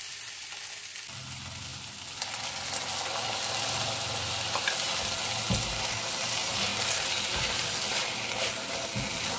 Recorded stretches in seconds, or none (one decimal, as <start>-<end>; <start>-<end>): 0.0-9.4